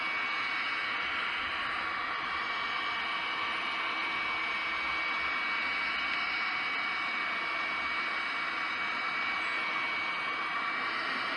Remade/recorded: recorded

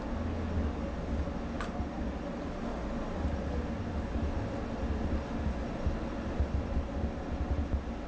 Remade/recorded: recorded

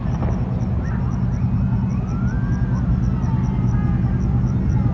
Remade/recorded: recorded